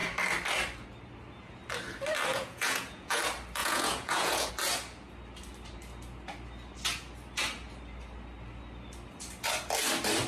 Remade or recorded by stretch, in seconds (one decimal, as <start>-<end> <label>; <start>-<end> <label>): 0.0-2.3 recorded; 2.3-3.2 remade; 3.2-3.6 recorded; 3.6-4.5 remade; 4.5-10.3 recorded